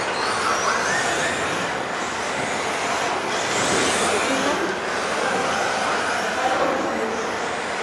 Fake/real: real